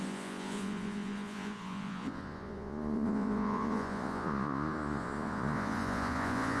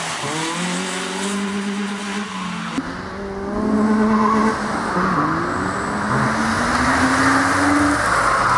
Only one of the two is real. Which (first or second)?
second